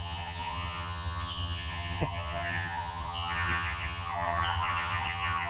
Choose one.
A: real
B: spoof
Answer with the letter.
B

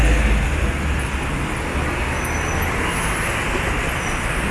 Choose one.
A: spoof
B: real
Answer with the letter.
B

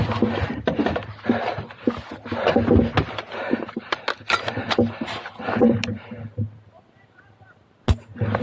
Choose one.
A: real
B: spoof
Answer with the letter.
A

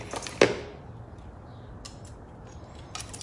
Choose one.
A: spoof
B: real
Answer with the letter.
B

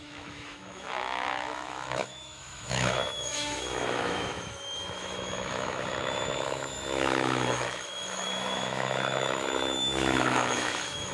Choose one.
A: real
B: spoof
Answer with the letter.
B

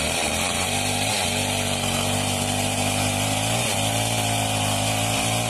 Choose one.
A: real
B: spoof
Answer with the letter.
B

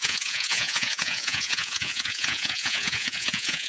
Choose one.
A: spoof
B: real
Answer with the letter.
A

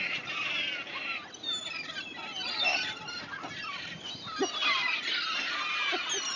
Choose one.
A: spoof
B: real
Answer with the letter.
B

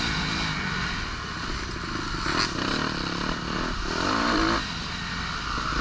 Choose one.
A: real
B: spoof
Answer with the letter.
A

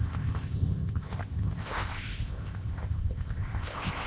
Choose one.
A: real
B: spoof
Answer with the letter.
B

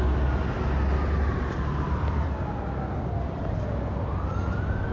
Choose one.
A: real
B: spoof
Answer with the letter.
A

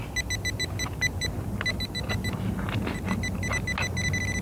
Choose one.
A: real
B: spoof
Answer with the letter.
A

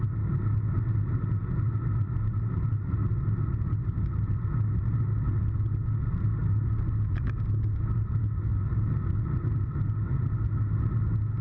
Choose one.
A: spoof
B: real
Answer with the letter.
B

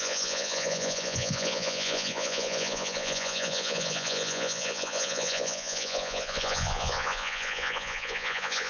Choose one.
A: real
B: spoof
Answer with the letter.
B